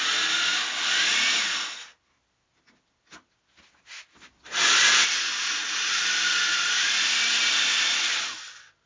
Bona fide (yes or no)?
yes